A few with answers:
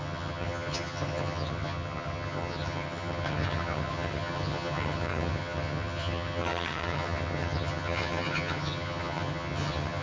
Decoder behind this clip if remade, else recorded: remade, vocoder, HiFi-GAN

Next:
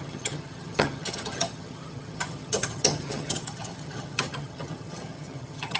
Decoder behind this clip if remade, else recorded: remade, vocoder, HiFi-GAN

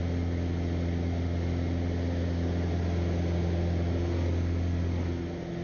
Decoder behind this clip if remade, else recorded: recorded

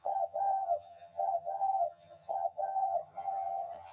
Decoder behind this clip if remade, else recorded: remade, vocoder, HiFi-GAN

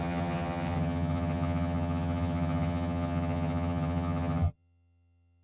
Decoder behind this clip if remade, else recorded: remade, vocoder, HiFi-GAN